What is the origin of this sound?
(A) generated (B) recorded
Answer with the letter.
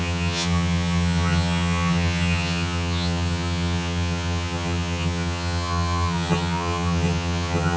A